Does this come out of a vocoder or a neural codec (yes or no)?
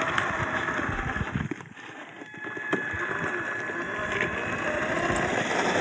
no